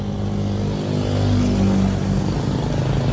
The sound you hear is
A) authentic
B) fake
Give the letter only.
A